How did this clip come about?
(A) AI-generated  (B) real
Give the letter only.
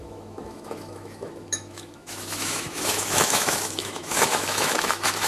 A